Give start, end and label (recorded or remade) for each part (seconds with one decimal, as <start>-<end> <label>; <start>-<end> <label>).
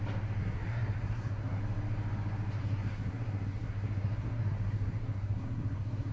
0.0-0.4 recorded; 0.4-1.6 remade; 1.6-2.6 recorded; 2.6-6.1 remade